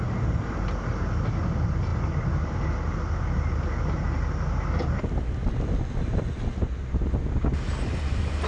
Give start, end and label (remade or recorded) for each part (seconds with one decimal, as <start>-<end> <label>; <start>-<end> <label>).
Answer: 0.0-8.5 recorded